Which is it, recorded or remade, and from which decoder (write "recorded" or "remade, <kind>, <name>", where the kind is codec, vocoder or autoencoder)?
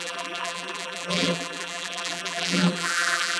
remade, vocoder, BigVGAN v2